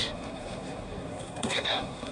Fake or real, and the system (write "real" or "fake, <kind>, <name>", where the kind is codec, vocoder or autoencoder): fake, codec, SNAC